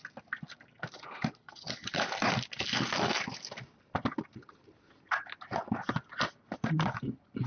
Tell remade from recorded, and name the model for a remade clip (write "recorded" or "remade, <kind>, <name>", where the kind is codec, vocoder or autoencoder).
recorded